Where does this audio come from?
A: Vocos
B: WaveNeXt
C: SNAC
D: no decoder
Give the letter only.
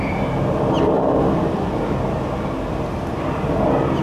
D